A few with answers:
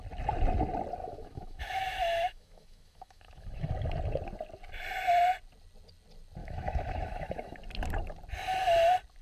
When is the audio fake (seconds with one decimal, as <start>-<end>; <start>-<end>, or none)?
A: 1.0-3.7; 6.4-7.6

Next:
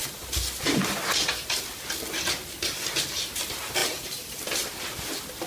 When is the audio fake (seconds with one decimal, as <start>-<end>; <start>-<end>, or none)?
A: none

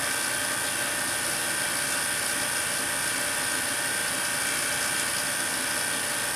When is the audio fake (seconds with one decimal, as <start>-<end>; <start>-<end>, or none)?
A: none

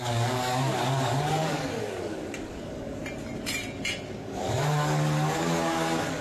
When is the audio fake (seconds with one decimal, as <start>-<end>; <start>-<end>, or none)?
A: 0.0-3.0; 4.1-6.2

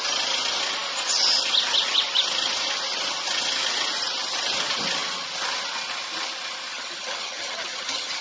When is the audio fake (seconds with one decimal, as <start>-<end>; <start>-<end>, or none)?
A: 6.7-8.2

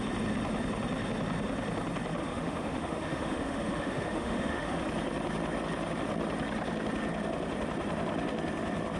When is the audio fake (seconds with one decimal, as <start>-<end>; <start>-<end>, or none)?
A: 2.2-4.8

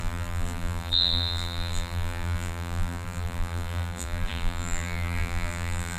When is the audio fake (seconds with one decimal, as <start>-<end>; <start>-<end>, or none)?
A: 0.0-6.0